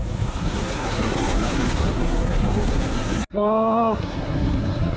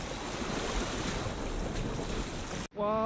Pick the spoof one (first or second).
first